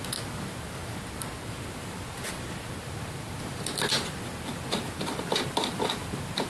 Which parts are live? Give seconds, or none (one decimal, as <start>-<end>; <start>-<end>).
0.0-6.5

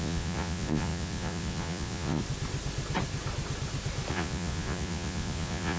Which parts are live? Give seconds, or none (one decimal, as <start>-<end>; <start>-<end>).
2.2-4.1